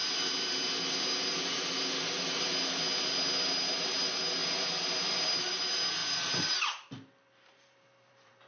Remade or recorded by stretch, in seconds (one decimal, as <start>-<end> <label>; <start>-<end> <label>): 0.0-4.4 recorded; 4.4-5.5 remade; 5.5-6.0 recorded; 6.0-8.5 remade